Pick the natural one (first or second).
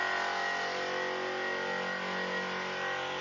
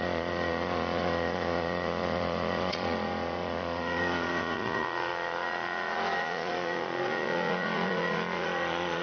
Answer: first